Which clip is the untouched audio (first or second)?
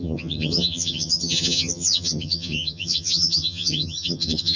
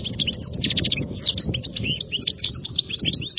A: second